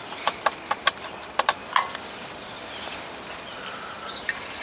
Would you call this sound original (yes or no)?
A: yes